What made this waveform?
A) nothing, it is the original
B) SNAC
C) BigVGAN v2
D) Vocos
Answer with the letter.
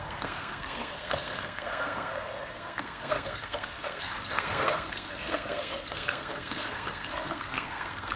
B